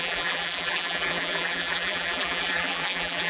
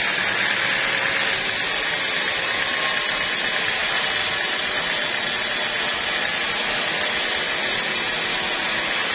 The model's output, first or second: first